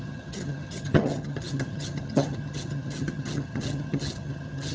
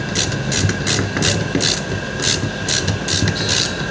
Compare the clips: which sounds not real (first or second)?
first